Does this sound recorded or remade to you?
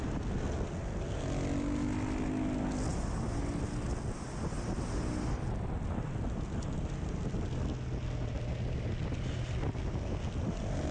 recorded